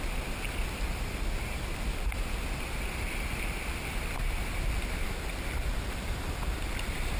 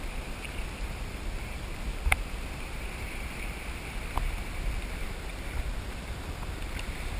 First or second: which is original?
first